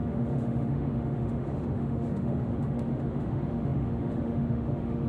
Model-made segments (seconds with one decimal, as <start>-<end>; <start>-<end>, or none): 0.0-5.1